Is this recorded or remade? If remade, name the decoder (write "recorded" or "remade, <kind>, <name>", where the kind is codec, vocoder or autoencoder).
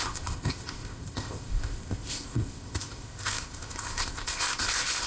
remade, codec, ZipCodec